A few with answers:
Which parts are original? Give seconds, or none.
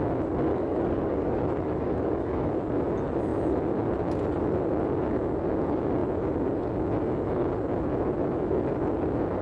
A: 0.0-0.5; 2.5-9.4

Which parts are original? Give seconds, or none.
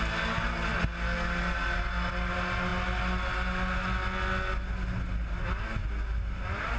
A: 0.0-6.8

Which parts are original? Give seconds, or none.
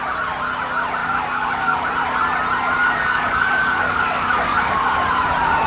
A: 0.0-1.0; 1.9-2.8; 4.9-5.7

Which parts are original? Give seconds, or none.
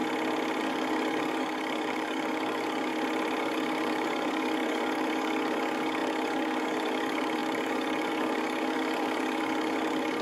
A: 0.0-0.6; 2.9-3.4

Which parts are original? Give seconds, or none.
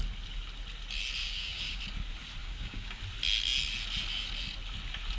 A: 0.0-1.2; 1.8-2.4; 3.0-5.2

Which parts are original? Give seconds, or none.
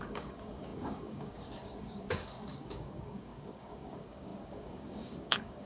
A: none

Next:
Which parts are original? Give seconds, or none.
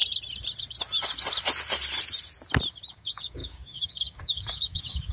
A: 0.0-2.9